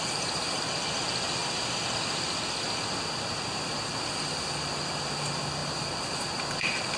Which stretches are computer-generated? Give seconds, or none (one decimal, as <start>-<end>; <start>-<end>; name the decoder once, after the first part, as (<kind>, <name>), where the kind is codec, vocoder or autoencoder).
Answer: 0.0-1.4 (vocoder, BigVGAN v2); 3.3-7.0

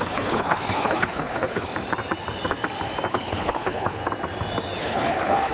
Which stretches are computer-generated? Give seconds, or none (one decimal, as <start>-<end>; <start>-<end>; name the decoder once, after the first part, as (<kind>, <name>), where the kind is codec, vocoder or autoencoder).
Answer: 0.0-1.7 (codec, HILCodec); 3.1-4.0; 4.8-5.5

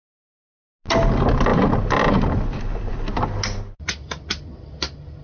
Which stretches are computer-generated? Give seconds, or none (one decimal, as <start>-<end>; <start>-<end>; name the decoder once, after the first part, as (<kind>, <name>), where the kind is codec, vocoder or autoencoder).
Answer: none

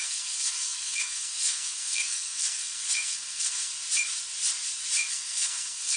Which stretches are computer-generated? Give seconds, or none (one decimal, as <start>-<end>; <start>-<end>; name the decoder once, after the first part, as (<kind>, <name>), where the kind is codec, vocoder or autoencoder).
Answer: 0.0-3.7 (codec, SNAC); 5.1-6.0

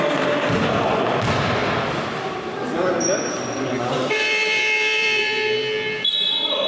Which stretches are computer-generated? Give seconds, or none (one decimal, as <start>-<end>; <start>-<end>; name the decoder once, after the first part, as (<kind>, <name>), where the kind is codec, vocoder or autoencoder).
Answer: 1.6-5.6 (vocoder, BigVGAN v2)

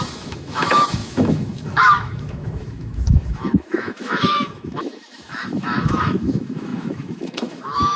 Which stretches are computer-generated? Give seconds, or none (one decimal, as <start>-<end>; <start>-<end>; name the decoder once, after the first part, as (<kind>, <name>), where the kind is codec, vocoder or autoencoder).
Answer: 0.0-8.0 (autoencoder, DAC-VAE)

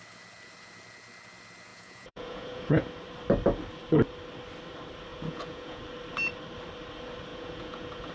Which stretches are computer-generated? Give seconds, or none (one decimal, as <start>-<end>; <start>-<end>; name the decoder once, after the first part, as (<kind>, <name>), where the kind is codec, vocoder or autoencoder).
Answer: 1.7-2.9 (vocoder, Vocos); 5.1-5.8; 7.3-8.1